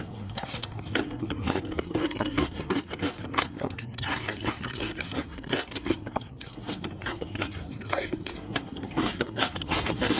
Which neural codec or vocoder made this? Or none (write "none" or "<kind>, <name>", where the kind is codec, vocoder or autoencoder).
codec, SNAC